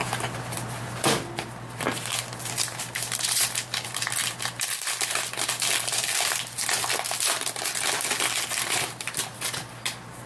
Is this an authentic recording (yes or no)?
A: yes